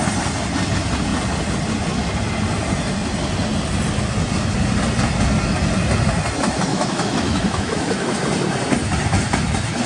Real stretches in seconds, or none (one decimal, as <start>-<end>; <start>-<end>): 0.0-6.7; 8.2-9.9